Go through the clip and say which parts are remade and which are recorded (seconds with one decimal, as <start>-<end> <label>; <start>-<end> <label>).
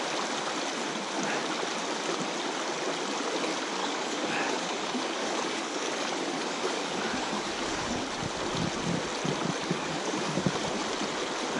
0.0-3.8 recorded; 3.8-8.0 remade; 8.0-9.6 recorded; 9.6-10.6 remade; 10.6-11.6 recorded